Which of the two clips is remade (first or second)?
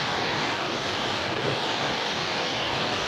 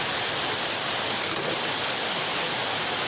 first